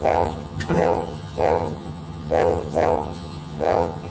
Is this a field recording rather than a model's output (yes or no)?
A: no